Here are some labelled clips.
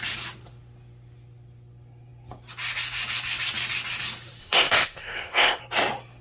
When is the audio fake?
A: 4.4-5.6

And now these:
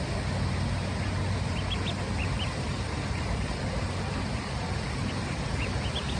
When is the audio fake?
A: 2.2-5.8

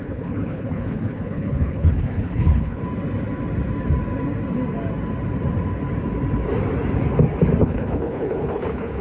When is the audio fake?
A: 0.0-2.8; 7.6-9.0

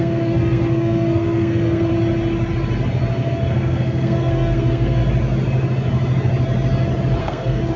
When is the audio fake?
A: 0.0-1.9; 3.3-5.0; 7.2-7.8

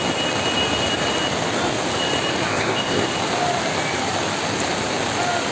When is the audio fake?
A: 2.5-3.0

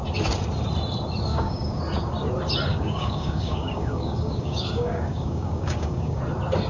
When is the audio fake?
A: 1.3-1.8; 2.7-6.2